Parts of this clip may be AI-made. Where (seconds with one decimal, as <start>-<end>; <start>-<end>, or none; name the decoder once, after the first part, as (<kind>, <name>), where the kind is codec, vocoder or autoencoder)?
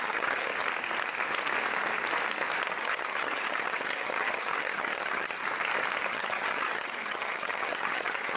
0.0-0.5 (vocoder, HiFi-GAN); 2.8-5.4; 6.1-8.4